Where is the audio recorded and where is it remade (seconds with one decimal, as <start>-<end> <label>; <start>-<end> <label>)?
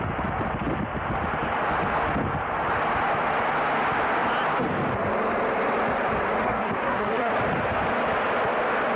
0.0-6.4 recorded; 6.4-7.3 remade; 7.3-9.0 recorded